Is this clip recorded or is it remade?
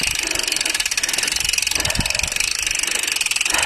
recorded